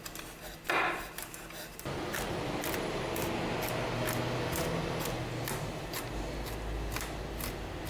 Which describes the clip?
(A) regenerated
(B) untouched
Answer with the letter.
B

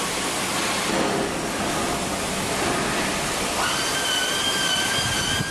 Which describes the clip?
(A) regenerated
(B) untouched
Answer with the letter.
B